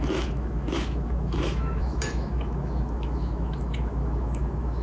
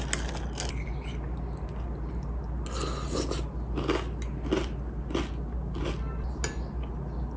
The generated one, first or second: first